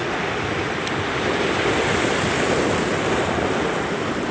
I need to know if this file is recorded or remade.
recorded